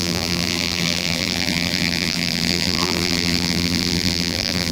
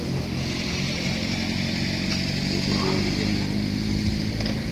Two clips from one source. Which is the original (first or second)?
second